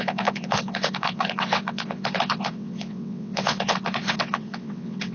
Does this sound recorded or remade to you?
remade